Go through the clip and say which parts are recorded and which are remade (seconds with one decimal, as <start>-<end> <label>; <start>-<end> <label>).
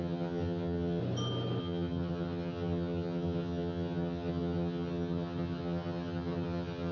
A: 0.0-1.0 remade; 1.0-1.6 recorded; 1.6-6.9 remade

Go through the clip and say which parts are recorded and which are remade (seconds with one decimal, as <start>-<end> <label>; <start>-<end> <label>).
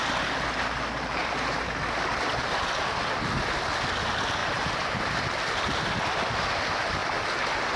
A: 0.0-1.2 recorded; 1.2-1.8 remade; 1.8-4.4 recorded; 4.4-5.0 remade; 5.0-7.8 recorded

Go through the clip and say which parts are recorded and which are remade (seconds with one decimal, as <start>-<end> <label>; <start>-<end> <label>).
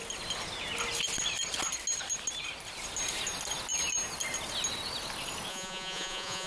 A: 0.0-5.5 recorded; 5.5-6.5 remade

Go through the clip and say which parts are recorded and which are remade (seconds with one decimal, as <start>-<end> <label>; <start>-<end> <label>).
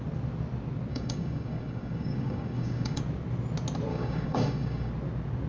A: 0.0-0.9 recorded; 0.9-3.0 remade; 3.0-3.9 recorded; 3.9-4.9 remade; 4.9-5.5 recorded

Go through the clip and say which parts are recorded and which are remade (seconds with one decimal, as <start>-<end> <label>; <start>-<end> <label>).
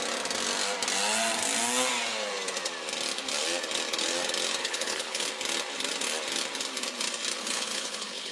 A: 0.0-4.6 recorded; 4.6-5.3 remade; 5.3-7.4 recorded; 7.4-8.3 remade